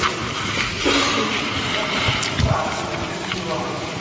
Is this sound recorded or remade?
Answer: recorded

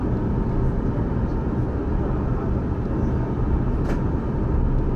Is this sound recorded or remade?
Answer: recorded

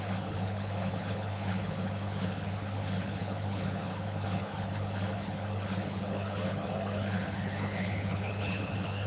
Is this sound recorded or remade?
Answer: remade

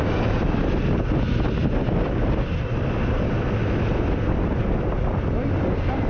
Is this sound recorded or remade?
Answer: recorded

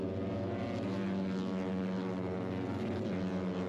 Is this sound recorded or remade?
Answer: recorded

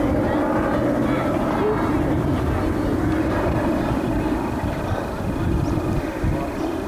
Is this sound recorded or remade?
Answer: recorded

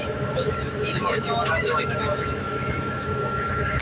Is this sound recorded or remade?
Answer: remade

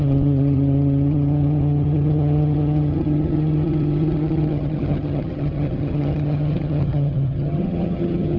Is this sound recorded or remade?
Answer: remade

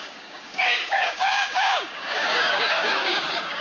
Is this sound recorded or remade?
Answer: remade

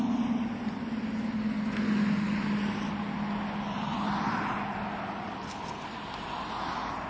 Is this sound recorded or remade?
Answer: recorded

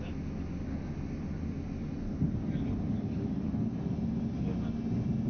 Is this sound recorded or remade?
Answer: recorded